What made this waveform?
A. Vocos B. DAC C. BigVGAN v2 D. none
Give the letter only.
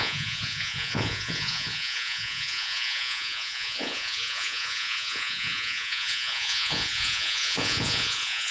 A